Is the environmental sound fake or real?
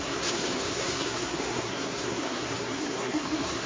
fake